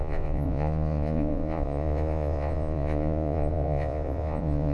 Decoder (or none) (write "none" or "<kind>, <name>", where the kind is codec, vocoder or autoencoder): vocoder, Vocos